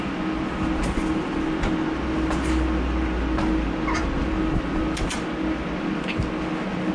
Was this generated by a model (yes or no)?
no